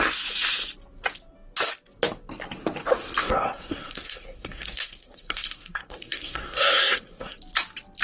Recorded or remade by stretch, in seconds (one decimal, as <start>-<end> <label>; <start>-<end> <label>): 0.0-3.2 recorded; 3.2-7.4 remade; 7.4-8.0 recorded